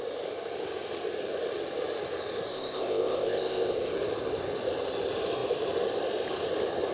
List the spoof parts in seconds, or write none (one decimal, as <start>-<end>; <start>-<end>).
2.5-3.9